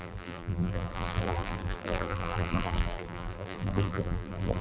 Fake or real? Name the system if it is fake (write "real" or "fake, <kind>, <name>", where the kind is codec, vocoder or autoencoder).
fake, vocoder, BigVGAN v2